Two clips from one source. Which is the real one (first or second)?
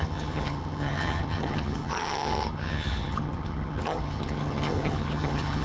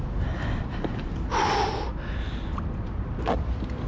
second